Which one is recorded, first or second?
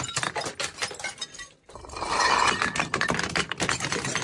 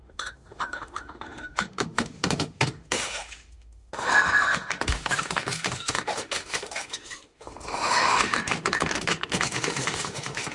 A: first